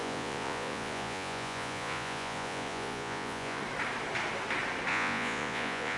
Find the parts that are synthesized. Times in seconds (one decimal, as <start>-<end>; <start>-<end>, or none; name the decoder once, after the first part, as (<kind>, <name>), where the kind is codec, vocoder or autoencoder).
0.0-3.6 (vocoder, Vocos); 4.9-6.0